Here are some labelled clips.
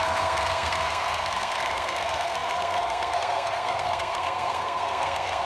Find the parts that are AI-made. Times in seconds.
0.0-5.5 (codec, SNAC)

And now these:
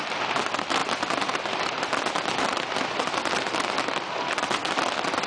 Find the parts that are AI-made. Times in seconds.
none